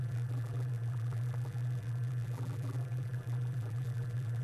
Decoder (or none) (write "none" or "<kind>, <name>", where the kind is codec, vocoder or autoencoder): vocoder, BigVGAN v2